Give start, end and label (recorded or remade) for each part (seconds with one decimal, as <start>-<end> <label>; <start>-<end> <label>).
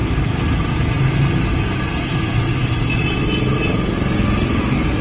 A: 0.0-5.0 recorded